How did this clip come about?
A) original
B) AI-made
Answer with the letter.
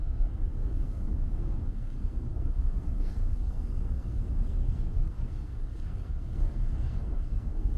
B